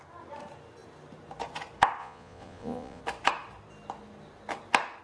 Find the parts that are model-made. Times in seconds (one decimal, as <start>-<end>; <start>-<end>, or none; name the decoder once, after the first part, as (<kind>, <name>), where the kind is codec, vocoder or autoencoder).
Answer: 2.0-3.0 (vocoder, Vocos)